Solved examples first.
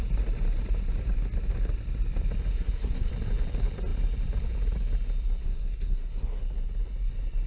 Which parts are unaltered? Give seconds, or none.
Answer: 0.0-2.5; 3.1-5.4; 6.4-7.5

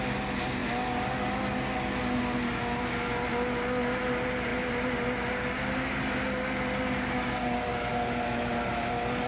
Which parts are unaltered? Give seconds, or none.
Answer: 0.0-9.3